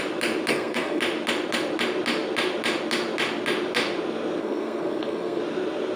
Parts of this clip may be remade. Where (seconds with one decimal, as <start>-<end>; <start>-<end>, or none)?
0.5-1.0; 4.4-5.4